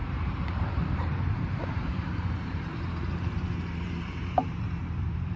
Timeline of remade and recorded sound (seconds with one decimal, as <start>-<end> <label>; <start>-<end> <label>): 0.0-5.4 remade